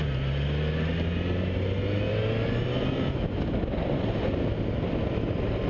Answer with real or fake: real